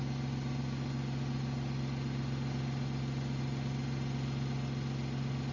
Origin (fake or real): real